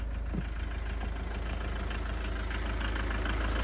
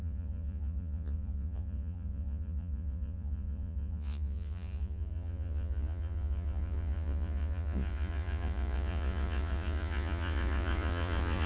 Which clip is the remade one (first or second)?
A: second